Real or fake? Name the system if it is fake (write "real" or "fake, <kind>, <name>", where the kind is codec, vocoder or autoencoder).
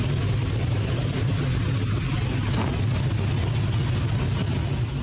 real